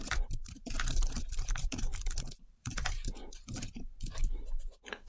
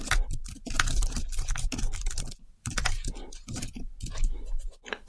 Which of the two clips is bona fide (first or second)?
second